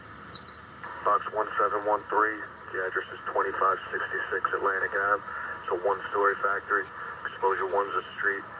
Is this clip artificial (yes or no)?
no